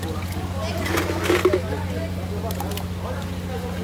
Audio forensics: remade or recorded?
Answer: recorded